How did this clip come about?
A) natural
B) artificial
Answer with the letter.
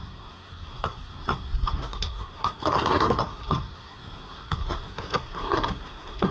B